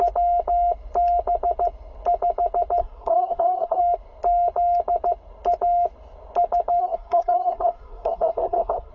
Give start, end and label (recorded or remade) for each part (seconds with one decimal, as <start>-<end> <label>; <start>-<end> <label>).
0.0-2.8 recorded; 2.8-3.8 remade; 3.8-6.8 recorded; 6.8-8.9 remade